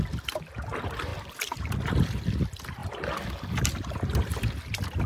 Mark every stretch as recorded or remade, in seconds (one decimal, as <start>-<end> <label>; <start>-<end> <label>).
0.0-1.1 remade; 1.1-2.2 recorded; 2.2-2.8 remade; 2.8-5.1 recorded